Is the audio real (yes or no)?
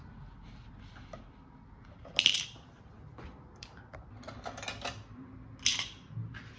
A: yes